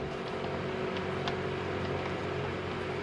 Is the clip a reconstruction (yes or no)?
no